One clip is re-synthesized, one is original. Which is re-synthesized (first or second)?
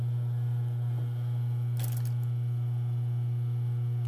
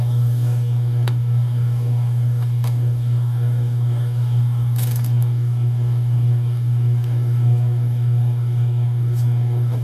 second